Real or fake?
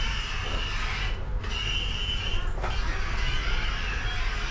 real